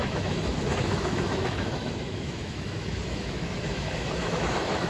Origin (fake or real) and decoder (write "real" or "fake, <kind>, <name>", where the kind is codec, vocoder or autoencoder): fake, autoencoder, DAC-VAE